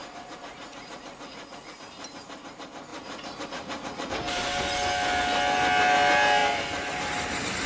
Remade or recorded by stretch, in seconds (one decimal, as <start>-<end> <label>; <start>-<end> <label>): 0.0-1.8 remade; 1.8-2.9 recorded; 2.9-4.1 remade; 4.1-7.7 recorded